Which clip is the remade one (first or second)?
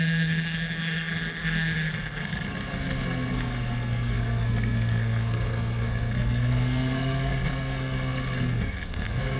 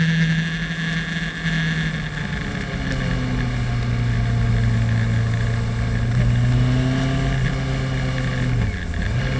first